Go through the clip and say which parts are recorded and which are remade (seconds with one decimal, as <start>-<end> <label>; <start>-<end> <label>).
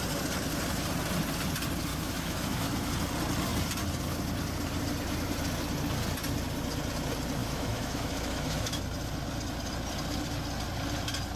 0.0-1.9 recorded; 1.9-2.9 remade; 2.9-7.4 recorded; 7.4-8.8 remade; 8.8-11.4 recorded